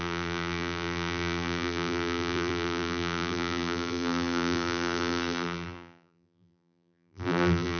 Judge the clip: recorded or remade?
remade